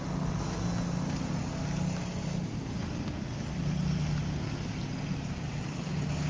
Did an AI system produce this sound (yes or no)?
no